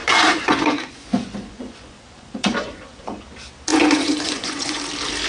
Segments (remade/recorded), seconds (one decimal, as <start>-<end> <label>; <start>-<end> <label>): 0.0-3.2 remade; 3.2-3.7 recorded; 3.7-4.8 remade; 4.8-5.3 recorded